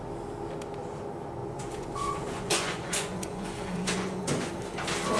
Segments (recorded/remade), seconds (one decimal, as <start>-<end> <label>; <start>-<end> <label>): 0.0-1.4 recorded; 1.4-4.5 remade; 4.5-5.2 recorded